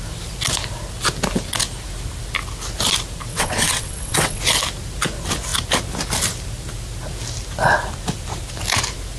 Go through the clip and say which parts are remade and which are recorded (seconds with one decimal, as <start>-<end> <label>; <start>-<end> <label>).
0.0-3.3 recorded; 3.3-4.4 remade; 4.4-9.2 recorded